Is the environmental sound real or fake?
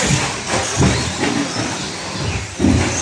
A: real